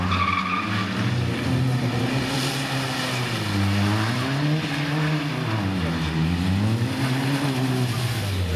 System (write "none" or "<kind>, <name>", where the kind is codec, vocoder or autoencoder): none